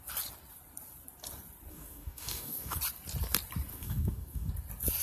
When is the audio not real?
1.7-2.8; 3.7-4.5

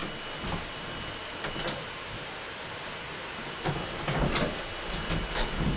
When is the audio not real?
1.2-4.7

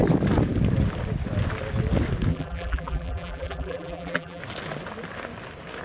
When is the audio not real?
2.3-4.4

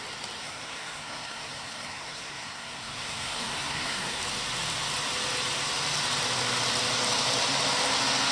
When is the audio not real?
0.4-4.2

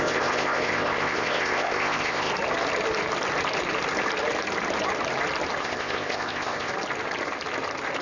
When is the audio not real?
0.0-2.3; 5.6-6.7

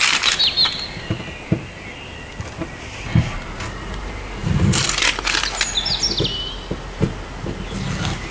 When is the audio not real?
4.4-5.0

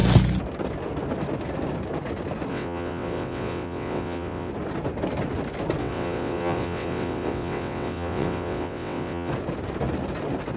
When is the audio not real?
2.5-4.5; 5.8-9.3

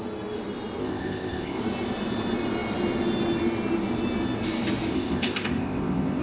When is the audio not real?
0.8-1.6; 4.9-6.2